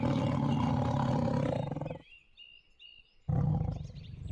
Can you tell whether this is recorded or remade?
recorded